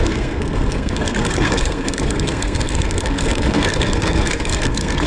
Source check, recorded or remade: remade